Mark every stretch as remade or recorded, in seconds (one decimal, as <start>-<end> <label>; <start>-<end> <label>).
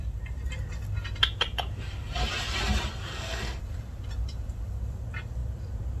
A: 0.0-3.1 recorded; 3.1-3.6 remade; 3.6-6.0 recorded